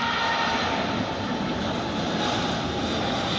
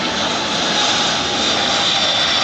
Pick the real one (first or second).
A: second